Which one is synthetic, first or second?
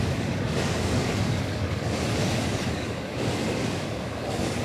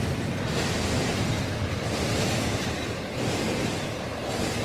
first